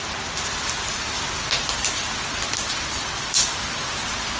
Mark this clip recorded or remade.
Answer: recorded